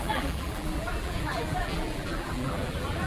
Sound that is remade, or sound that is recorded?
remade